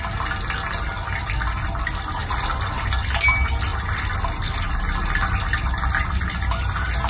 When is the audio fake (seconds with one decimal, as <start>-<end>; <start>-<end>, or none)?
none

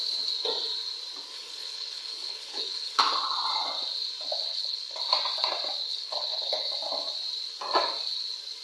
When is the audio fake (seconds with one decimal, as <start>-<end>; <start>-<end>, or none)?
1.3-3.0; 4.5-5.0; 5.8-6.7

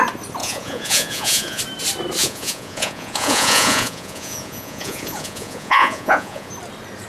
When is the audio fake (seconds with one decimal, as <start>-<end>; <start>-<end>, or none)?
0.4-1.6; 2.2-6.5